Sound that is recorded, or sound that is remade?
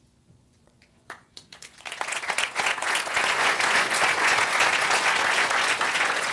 remade